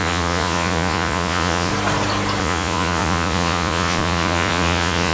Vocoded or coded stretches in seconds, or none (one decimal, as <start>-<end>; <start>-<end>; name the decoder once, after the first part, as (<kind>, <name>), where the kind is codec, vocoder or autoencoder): 0.0-1.7 (vocoder, Vocos); 2.4-5.1